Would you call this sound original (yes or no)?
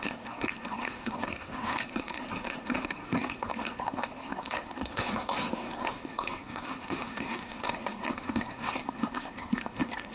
no